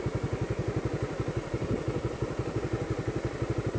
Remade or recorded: recorded